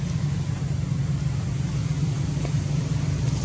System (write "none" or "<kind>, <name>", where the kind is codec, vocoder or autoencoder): none